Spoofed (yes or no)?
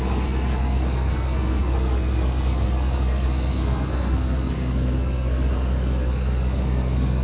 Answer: yes